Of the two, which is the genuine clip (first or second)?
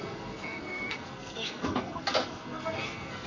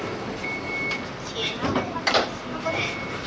second